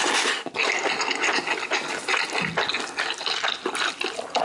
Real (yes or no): yes